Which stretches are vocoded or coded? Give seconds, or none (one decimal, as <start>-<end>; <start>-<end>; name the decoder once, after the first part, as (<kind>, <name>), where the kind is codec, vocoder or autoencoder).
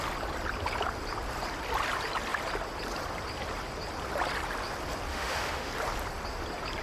5.1-5.7 (autoencoder, DAC-VAE)